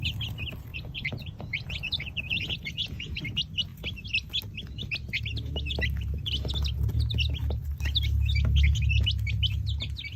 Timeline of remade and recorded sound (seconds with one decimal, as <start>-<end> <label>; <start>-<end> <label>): 0.0-0.7 recorded; 0.7-3.2 remade; 3.2-10.2 recorded

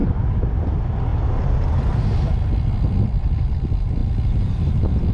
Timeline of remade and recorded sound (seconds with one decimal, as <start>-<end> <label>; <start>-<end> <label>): 0.0-0.7 remade; 0.7-1.1 recorded; 1.1-1.7 remade; 1.7-5.1 recorded

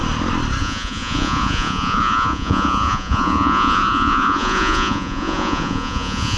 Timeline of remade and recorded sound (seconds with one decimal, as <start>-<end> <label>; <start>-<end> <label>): 0.0-0.6 recorded; 0.6-6.4 remade

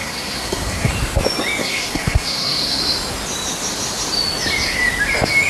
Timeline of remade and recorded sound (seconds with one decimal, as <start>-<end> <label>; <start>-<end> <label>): 0.0-0.9 remade; 0.9-1.6 recorded; 1.6-2.8 remade; 2.8-5.5 recorded

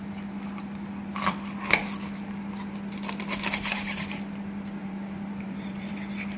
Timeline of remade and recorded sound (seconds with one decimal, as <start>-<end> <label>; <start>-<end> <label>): 0.0-4.8 recorded; 4.8-5.9 remade; 5.9-6.4 recorded

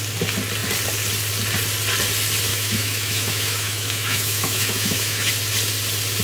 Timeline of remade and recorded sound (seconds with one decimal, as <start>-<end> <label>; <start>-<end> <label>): 0.0-2.5 recorded; 2.5-5.3 remade; 5.3-6.2 recorded

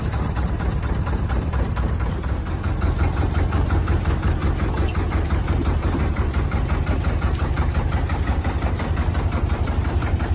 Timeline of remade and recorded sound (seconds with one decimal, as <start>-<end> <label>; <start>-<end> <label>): 0.0-10.3 remade

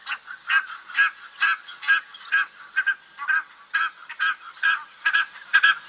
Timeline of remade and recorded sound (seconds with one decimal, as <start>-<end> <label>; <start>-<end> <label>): 0.0-4.9 recorded; 4.9-5.5 remade; 5.5-5.9 recorded